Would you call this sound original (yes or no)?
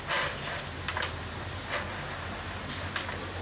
yes